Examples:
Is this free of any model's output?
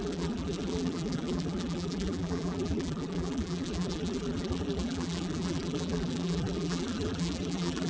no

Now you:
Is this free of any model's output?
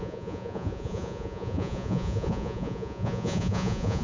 no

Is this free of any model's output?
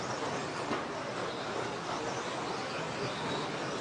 yes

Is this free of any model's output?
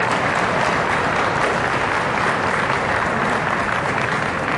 yes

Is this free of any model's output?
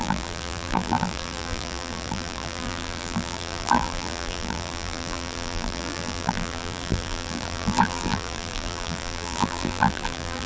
no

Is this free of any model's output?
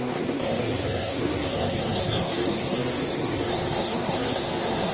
no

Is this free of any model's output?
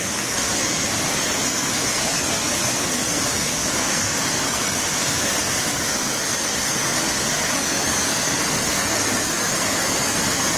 no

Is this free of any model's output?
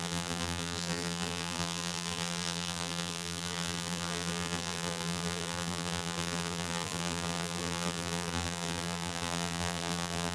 no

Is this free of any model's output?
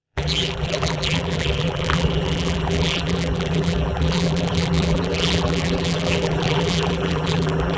no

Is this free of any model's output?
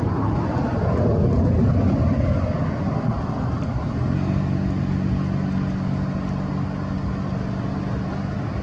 yes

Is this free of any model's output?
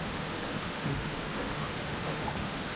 no